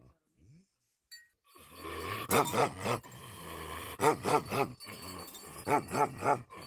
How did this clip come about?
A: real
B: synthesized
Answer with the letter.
A